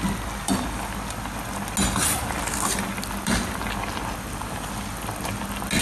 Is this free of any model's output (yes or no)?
yes